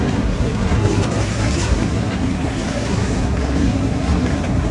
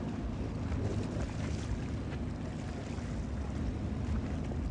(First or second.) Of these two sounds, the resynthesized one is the first